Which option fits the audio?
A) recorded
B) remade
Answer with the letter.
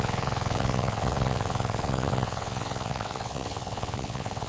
B